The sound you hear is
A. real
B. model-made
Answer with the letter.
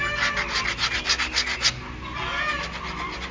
A